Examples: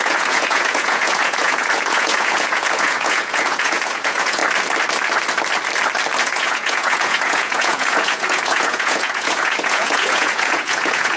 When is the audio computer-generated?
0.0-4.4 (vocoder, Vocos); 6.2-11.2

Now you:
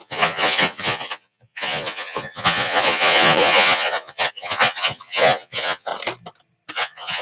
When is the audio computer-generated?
0.0-5.9 (vocoder, Vocos); 6.7-7.2